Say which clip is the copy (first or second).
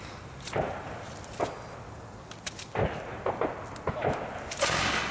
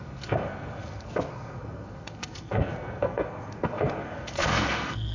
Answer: second